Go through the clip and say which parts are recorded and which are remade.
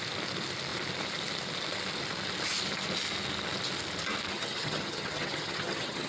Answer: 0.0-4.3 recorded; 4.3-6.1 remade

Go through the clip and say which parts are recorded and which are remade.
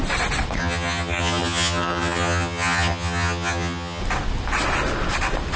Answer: 0.0-0.6 recorded; 0.6-4.0 remade; 4.0-5.6 recorded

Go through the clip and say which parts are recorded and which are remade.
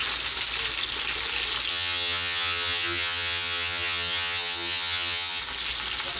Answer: 0.0-1.7 recorded; 1.7-5.4 remade; 5.4-6.2 recorded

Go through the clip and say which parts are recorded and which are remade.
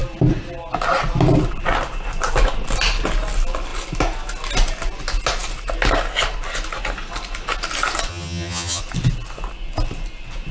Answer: 0.0-8.1 recorded; 8.1-8.8 remade; 8.8-10.5 recorded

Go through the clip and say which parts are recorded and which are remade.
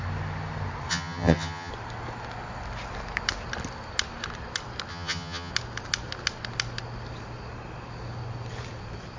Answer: 0.0-0.9 recorded; 0.9-1.7 remade; 1.7-4.9 recorded; 4.9-5.5 remade; 5.5-9.2 recorded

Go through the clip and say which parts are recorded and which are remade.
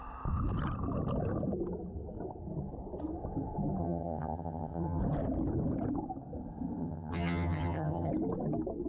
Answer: 0.0-3.8 recorded; 3.8-5.0 remade; 5.0-6.8 recorded; 6.8-8.1 remade; 8.1-8.9 recorded